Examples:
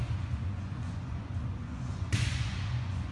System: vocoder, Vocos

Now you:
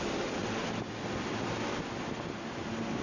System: none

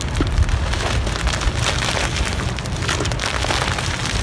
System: none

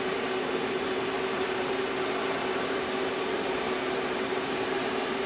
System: vocoder, BigVGAN v2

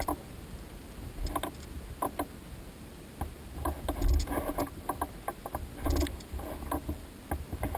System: none